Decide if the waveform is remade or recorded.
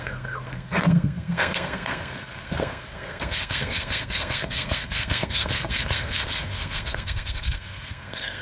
remade